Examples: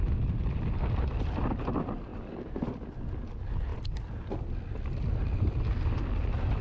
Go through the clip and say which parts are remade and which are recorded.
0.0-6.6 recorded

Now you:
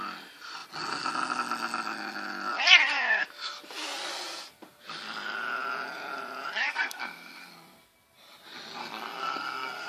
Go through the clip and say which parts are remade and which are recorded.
0.0-6.7 recorded; 6.7-7.5 remade; 7.5-8.8 recorded; 8.8-9.9 remade

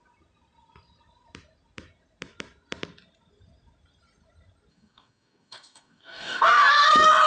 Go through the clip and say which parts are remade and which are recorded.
0.0-4.7 recorded; 4.7-6.7 remade; 6.7-7.3 recorded

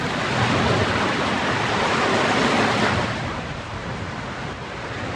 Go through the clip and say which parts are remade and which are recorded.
0.0-5.2 recorded

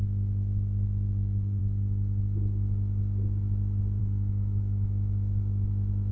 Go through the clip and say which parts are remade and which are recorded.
0.0-1.6 remade; 1.6-4.0 recorded; 4.0-6.1 remade

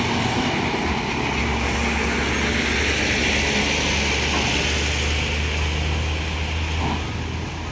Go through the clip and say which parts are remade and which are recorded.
0.0-7.7 recorded

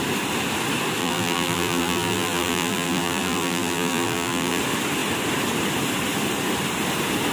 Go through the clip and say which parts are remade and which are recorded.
0.0-1.0 recorded; 1.0-4.6 remade; 4.6-7.3 recorded

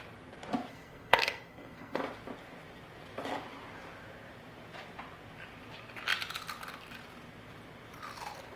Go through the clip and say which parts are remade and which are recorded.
0.0-0.7 recorded; 0.7-2.0 remade; 2.0-8.6 recorded